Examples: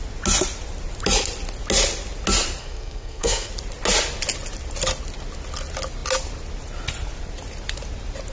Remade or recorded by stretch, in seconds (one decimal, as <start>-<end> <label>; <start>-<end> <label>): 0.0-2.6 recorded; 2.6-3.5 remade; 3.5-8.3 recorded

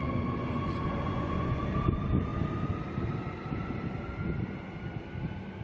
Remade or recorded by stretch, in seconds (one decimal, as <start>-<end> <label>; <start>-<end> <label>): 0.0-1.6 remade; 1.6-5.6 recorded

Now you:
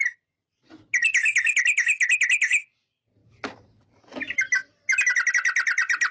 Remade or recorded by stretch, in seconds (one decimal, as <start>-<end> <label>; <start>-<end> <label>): 0.0-6.1 recorded

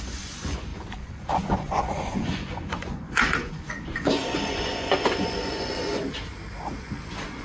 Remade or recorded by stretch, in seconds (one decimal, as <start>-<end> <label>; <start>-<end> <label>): 0.0-6.0 remade; 6.0-6.8 recorded; 6.8-7.4 remade

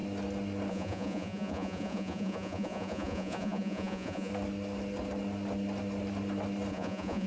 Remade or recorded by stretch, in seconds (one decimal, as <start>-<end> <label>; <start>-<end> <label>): 0.0-0.7 recorded; 0.7-4.3 remade; 4.3-6.7 recorded; 6.7-7.3 remade

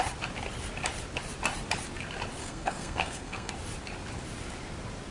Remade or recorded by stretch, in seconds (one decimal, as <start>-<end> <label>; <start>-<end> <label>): 0.0-2.4 recorded; 2.4-3.5 remade; 3.5-5.1 recorded